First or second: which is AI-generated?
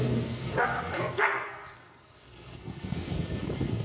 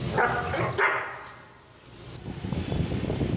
first